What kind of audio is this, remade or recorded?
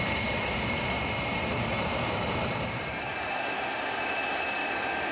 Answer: remade